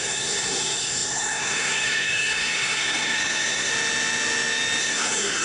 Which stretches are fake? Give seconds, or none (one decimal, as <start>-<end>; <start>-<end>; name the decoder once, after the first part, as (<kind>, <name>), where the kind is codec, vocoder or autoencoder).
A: 0.0-3.7 (codec, SNAC); 4.8-5.4